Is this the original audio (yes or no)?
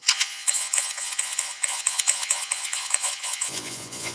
no